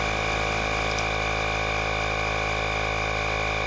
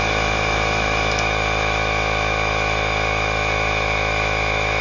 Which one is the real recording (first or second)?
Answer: first